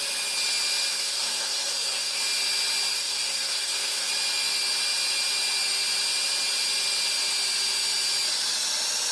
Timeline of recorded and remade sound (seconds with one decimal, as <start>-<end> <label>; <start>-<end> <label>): 0.0-0.9 recorded; 0.9-2.2 remade; 2.2-2.9 recorded; 2.9-4.1 remade; 4.1-9.1 recorded